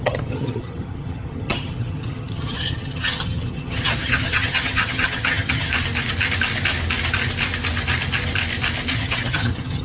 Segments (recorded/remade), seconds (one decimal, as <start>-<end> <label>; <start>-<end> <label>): 0.0-5.7 remade; 5.7-8.9 recorded; 8.9-9.8 remade